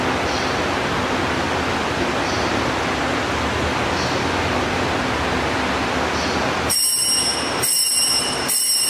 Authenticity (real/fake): real